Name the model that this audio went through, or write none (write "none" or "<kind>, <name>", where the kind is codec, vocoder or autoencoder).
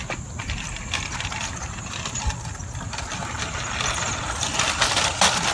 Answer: none